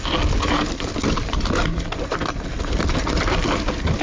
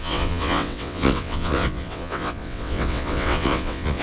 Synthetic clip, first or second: second